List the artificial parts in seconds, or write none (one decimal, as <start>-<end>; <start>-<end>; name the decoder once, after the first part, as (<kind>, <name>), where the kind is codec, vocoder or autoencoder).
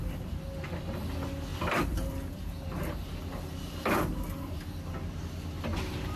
none